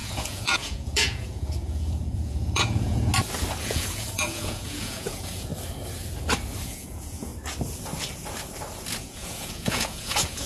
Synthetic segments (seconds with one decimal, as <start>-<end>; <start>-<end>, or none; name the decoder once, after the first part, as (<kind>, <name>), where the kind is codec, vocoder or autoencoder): 0.0-3.1 (vocoder, Vocos); 3.6-5.5; 6.6-7.3; 9.0-10.5